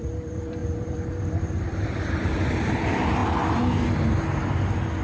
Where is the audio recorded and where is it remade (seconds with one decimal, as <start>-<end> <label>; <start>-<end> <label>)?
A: 0.0-3.2 remade; 3.2-4.2 recorded; 4.2-5.0 remade